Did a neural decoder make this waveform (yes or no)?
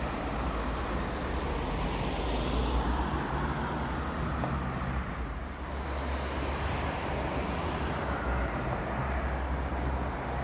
no